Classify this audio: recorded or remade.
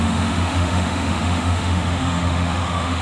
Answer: remade